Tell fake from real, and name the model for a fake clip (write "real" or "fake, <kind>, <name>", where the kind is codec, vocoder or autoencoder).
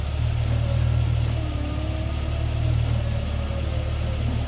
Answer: real